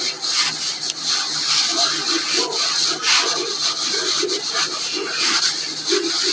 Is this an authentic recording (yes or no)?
yes